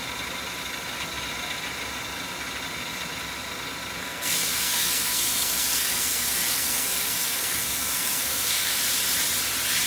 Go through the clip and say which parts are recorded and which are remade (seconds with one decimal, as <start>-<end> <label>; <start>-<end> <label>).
0.0-4.0 recorded; 4.0-8.8 remade; 8.8-9.9 recorded